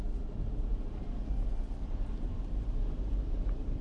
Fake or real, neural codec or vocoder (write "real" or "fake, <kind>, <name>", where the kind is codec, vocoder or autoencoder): fake, vocoder, BigVGAN v2